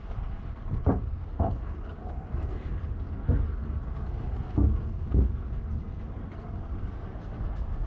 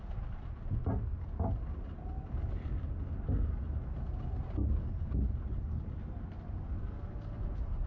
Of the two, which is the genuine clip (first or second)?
second